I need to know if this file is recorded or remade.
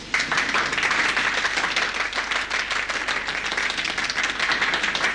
recorded